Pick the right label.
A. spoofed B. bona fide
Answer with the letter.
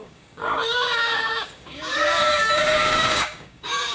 A